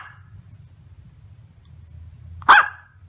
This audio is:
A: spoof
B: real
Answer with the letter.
B